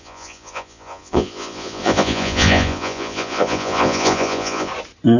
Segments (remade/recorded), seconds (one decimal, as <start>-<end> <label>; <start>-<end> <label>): 0.0-4.7 remade; 4.7-5.2 recorded